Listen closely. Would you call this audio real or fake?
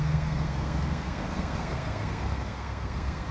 fake